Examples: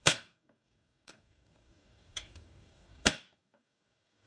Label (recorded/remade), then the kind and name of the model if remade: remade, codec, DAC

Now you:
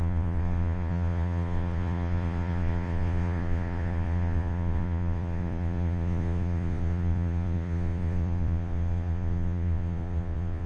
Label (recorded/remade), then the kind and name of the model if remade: remade, vocoder, Vocos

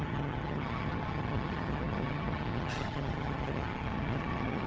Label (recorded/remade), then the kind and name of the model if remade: remade, vocoder, HiFi-GAN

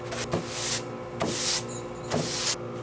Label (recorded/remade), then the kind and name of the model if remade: recorded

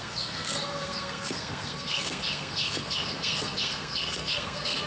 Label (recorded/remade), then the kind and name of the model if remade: remade, codec, SNAC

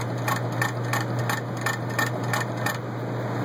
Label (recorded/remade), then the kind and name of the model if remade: recorded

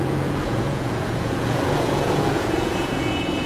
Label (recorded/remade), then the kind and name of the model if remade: remade, vocoder, Vocos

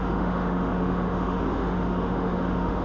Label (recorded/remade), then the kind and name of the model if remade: remade, autoencoder, DAC-VAE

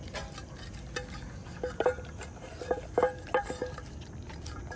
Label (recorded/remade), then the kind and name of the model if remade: recorded